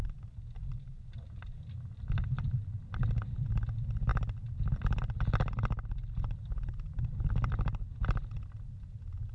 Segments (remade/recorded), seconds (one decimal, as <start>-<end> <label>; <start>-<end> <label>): 0.0-9.3 recorded